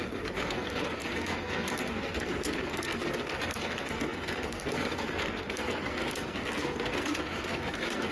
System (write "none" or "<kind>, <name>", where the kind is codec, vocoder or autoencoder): codec, SNAC